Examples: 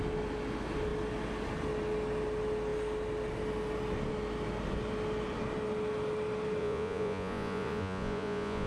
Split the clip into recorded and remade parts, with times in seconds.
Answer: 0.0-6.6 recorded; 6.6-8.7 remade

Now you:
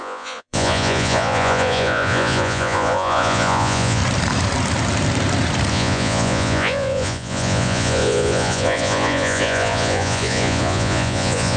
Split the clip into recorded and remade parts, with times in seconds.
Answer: 0.0-4.0 remade; 4.0-5.7 recorded; 5.7-11.6 remade

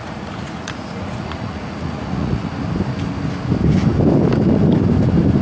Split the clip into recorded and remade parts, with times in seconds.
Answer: 0.0-2.5 remade; 2.5-5.4 recorded

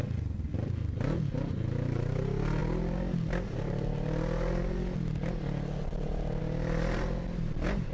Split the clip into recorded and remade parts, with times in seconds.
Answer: 0.0-7.9 recorded

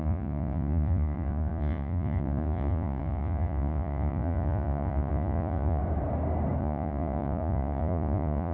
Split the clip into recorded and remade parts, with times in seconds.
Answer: 0.0-5.8 remade; 5.8-6.6 recorded; 6.6-8.5 remade

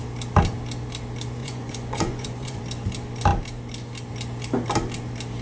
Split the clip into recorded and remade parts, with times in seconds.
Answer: 0.0-1.4 recorded; 1.4-2.6 remade; 2.6-5.4 recorded

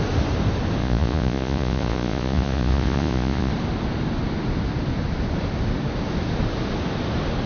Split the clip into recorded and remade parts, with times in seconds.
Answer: 0.0-0.8 recorded; 0.8-3.5 remade; 3.5-7.5 recorded

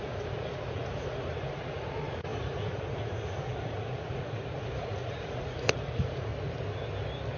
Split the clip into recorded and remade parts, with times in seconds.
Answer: 0.0-6.3 remade; 6.3-7.4 recorded